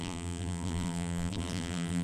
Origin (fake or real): fake